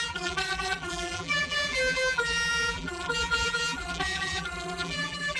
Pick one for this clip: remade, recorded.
remade